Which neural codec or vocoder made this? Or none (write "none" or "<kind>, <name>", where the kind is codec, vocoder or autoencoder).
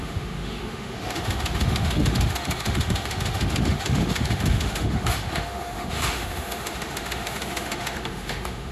autoencoder, DAC-VAE